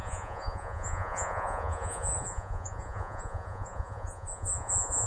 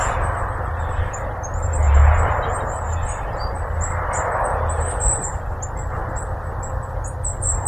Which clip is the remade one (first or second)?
first